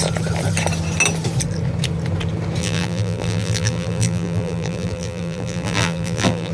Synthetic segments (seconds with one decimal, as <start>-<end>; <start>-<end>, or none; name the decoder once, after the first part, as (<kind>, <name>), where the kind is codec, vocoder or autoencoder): 2.6-6.5 (vocoder, BigVGAN v2)